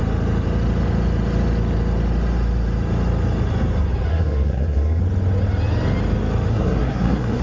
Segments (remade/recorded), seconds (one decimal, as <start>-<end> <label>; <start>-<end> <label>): 0.0-4.1 recorded; 4.1-5.0 remade; 5.0-6.5 recorded; 6.5-7.4 remade